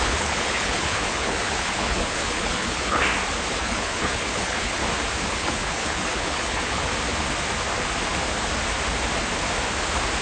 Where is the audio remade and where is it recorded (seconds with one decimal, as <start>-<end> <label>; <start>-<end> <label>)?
0.0-3.0 remade; 3.0-3.6 recorded; 3.6-4.8 remade; 4.8-5.3 recorded; 5.3-6.8 remade; 6.8-10.2 recorded